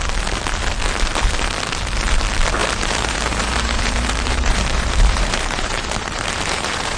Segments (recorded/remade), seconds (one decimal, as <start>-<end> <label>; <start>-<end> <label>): 0.0-2.6 recorded; 2.6-7.0 remade